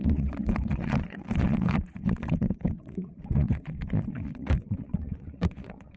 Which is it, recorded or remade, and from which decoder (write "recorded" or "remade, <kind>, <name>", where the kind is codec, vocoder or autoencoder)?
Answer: remade, vocoder, WaveNeXt